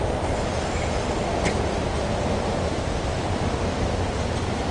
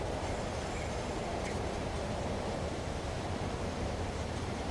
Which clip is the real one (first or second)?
first